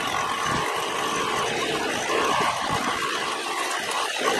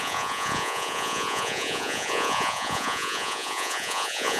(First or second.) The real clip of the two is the first